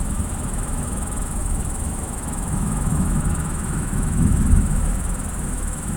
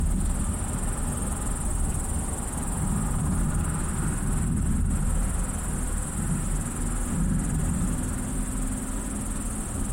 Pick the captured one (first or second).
second